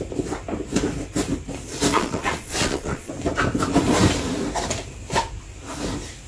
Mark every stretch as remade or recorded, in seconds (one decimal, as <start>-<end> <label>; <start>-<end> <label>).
0.0-1.9 recorded; 1.9-3.1 remade; 3.1-6.3 recorded